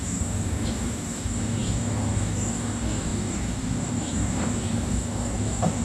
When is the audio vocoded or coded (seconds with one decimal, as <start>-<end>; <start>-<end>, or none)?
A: 0.0-5.8